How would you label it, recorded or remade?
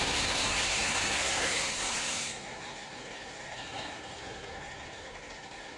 remade